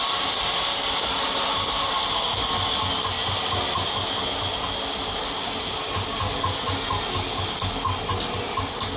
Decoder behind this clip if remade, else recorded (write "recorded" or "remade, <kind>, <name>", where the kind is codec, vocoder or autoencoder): recorded